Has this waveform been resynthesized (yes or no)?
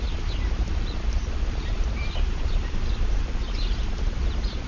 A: yes